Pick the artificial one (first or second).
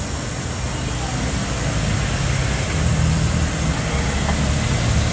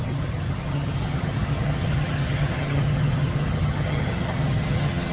second